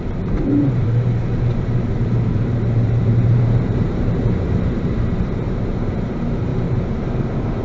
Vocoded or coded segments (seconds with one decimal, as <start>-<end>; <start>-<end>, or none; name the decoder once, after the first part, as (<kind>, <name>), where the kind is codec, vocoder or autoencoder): 0.0-6.5 (vocoder, BigVGAN v2)